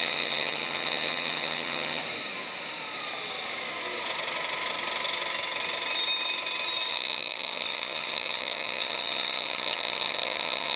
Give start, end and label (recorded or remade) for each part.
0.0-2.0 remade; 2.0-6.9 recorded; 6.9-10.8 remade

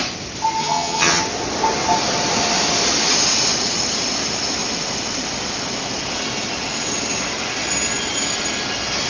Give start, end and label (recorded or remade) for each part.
0.0-0.6 recorded; 0.6-1.2 remade; 1.2-9.1 recorded